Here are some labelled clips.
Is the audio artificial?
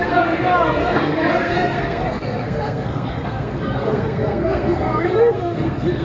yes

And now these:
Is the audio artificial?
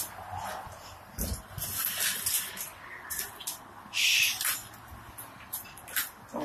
no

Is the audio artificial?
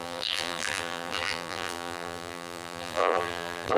yes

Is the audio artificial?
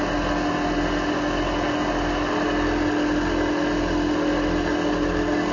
no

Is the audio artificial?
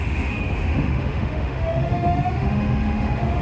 yes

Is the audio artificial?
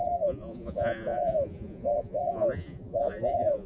yes